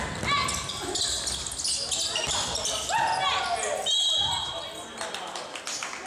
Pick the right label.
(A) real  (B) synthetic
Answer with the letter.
A